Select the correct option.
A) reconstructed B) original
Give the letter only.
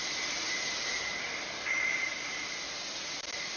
B